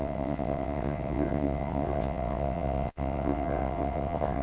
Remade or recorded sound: remade